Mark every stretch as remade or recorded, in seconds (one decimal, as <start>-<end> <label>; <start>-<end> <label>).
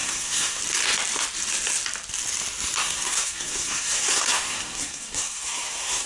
0.0-0.6 remade; 0.6-2.8 recorded; 2.8-6.1 remade